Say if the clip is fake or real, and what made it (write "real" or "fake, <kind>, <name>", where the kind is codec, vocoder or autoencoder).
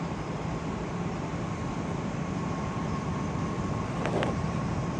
fake, vocoder, BigVGAN v2